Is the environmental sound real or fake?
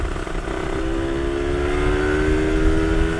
real